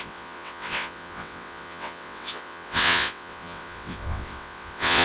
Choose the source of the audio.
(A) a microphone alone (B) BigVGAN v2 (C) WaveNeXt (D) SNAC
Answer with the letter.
C